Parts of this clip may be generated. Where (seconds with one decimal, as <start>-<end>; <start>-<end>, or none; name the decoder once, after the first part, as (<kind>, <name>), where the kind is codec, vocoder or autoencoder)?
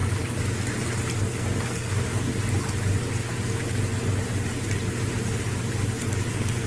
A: 1.2-2.3 (codec, SNAC); 6.3-6.7